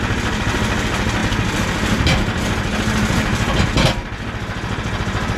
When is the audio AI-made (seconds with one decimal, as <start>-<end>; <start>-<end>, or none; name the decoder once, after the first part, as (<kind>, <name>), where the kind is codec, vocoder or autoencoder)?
none